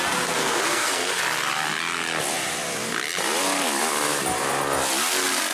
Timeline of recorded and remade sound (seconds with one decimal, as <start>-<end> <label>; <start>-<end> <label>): 0.0-0.4 recorded; 0.4-1.2 remade; 1.2-5.5 recorded

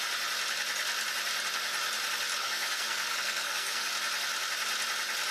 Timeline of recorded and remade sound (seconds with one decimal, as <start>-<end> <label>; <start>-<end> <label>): 0.0-2.4 recorded; 2.4-3.9 remade; 3.9-5.3 recorded

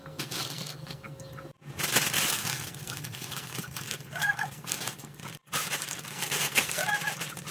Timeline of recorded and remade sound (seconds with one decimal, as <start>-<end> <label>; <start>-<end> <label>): 0.0-1.2 remade; 1.2-2.3 recorded; 2.3-5.2 remade; 5.2-5.8 recorded; 5.8-6.8 remade; 6.8-7.5 recorded

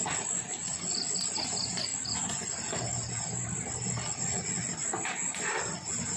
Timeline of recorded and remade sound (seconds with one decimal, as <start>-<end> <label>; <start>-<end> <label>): 0.0-6.2 recorded

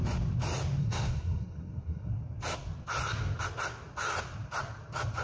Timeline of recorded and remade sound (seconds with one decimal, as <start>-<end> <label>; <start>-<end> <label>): 0.0-0.8 recorded; 0.8-2.1 remade; 2.1-5.2 recorded

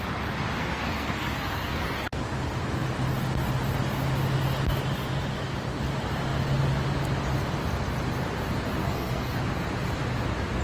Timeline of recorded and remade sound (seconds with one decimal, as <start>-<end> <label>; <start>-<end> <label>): 0.0-0.6 recorded; 0.6-2.2 remade; 2.2-8.8 recorded; 8.8-9.4 remade; 9.4-10.6 recorded